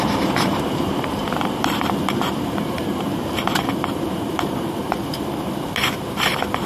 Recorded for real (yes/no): no